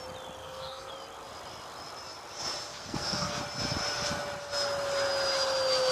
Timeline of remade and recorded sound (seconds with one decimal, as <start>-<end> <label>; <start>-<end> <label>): 0.0-0.4 recorded; 0.4-0.9 remade; 0.9-2.7 recorded; 2.7-3.4 remade; 3.4-5.9 recorded